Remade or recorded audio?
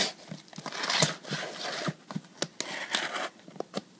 recorded